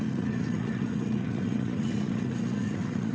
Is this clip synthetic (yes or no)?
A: yes